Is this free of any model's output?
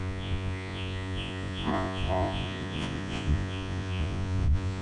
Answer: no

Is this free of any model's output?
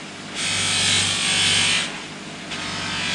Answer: yes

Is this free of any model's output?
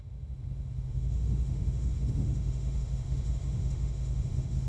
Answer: no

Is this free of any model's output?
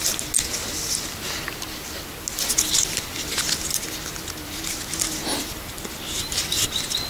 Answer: yes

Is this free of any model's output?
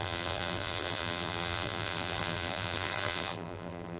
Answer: no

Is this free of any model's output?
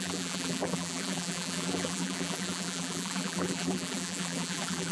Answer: no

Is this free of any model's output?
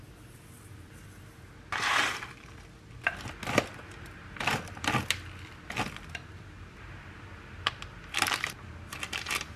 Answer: yes